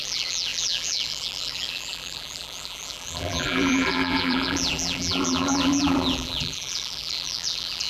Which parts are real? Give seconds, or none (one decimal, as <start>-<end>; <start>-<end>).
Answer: none